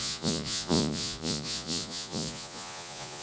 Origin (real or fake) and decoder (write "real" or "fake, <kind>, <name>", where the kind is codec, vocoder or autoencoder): fake, vocoder, Vocos